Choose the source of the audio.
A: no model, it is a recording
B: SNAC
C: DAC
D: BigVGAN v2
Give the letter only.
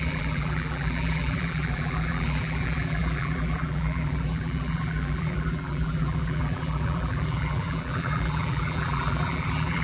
D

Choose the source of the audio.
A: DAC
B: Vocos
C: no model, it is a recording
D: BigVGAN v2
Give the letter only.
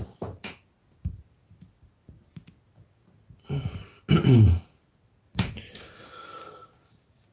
C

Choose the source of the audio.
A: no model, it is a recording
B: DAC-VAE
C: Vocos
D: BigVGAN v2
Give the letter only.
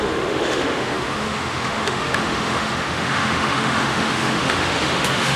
B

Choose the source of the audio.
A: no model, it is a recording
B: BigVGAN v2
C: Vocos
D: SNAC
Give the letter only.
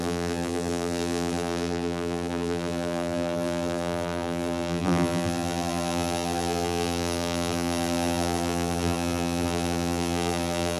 B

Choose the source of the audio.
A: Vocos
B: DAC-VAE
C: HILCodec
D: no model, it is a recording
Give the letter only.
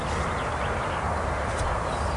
D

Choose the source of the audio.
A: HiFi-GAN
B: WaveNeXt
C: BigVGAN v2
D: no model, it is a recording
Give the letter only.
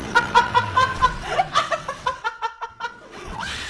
B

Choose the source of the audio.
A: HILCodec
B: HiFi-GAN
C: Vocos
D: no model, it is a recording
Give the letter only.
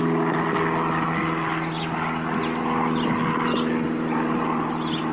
D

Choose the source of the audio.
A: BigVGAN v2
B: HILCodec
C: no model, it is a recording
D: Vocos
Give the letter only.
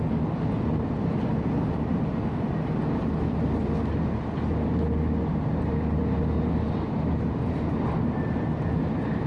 C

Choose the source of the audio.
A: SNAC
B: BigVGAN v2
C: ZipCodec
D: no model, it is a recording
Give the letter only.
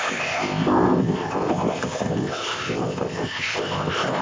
C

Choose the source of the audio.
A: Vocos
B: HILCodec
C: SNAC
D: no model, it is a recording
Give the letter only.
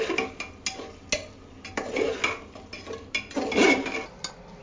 D